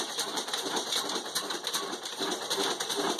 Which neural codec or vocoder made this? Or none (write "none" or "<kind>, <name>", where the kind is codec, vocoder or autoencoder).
vocoder, BigVGAN v2